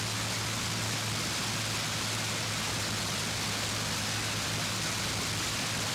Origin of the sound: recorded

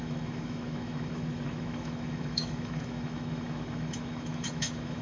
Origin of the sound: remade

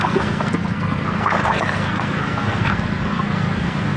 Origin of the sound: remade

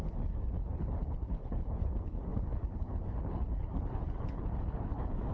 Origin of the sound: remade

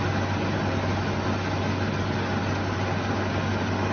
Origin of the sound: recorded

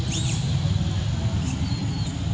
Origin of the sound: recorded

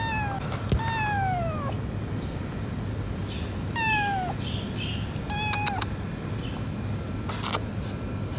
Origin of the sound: recorded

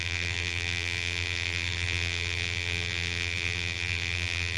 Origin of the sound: remade